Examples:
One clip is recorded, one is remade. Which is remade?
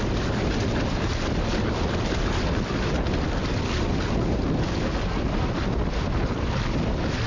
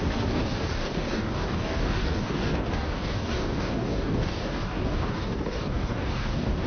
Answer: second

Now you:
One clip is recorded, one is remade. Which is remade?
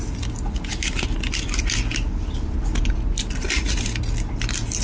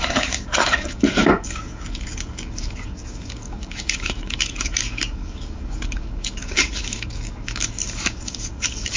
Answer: second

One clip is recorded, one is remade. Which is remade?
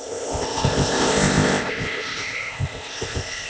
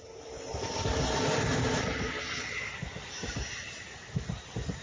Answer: first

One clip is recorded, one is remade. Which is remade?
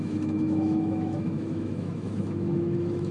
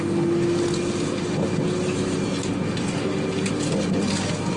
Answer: first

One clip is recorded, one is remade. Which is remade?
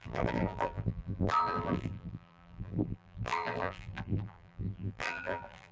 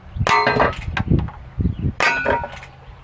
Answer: first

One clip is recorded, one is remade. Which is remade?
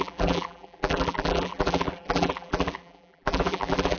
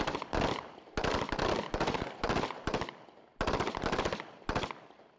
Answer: first